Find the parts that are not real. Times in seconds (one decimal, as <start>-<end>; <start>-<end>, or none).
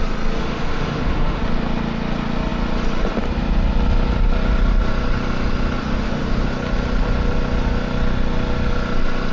0.4-1.4; 5.8-6.5